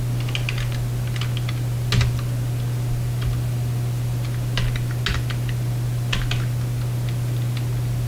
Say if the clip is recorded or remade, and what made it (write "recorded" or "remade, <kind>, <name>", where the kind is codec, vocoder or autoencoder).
recorded